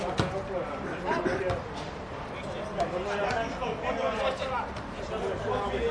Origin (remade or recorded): recorded